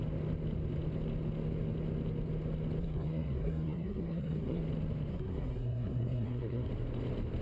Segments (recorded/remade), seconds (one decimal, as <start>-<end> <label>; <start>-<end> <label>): 0.0-2.8 recorded; 2.8-4.6 remade; 4.6-5.1 recorded; 5.1-6.7 remade; 6.7-7.4 recorded